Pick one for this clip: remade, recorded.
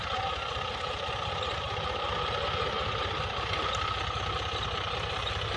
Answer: recorded